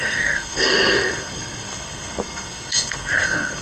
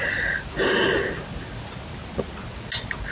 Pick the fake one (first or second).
first